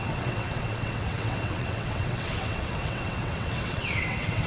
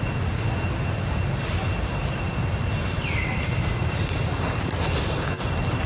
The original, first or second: second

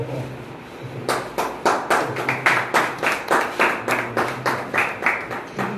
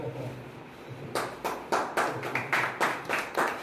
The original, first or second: first